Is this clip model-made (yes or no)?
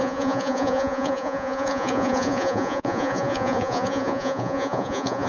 yes